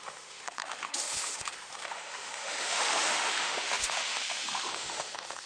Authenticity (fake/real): fake